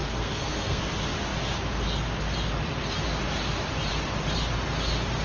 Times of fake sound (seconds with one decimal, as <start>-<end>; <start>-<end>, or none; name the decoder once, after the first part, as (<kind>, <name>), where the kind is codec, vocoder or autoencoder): 0.0-0.8 (codec, SNAC)